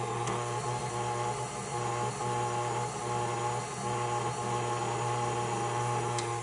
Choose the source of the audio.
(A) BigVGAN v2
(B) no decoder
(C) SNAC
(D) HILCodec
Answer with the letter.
B